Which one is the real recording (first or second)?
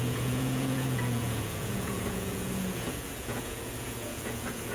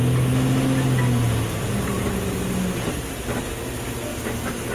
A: second